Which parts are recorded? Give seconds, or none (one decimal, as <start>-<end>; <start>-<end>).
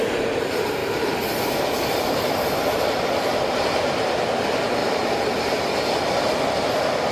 0.0-0.8; 3.5-4.8; 5.5-7.1